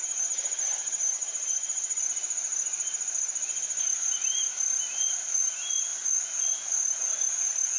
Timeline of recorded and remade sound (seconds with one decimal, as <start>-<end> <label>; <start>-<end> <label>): 0.0-2.0 remade; 2.0-7.8 recorded